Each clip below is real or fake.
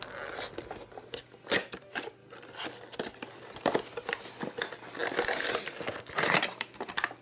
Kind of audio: real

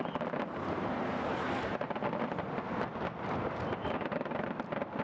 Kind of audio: real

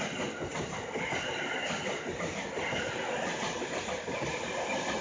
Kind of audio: real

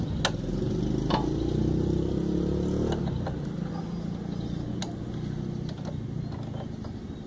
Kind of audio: real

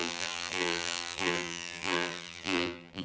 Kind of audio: fake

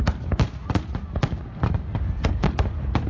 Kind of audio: fake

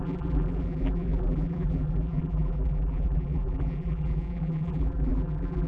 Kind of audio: fake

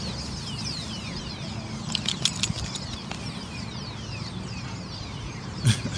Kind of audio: real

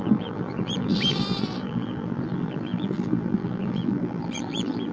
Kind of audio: fake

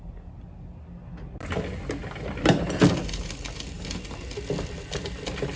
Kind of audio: real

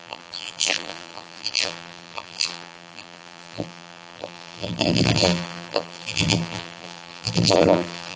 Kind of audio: fake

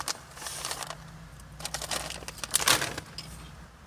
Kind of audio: real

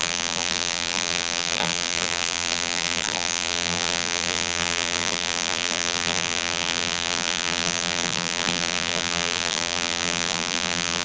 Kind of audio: fake